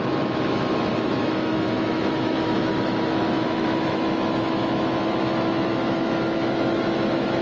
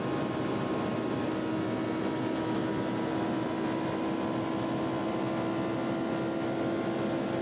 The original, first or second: second